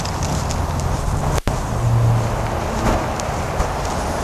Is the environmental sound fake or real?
real